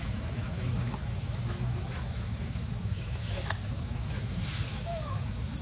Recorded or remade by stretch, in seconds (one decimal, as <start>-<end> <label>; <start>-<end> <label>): 0.0-5.6 remade